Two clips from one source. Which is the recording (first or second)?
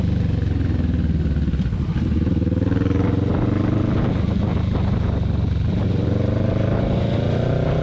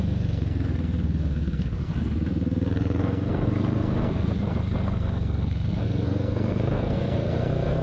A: first